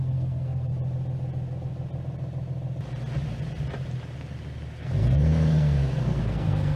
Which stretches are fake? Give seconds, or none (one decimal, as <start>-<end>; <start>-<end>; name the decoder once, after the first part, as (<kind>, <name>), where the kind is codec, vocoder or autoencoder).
0.0-0.7 (codec, SNAC); 4.8-6.8